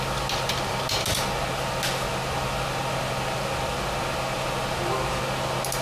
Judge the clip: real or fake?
real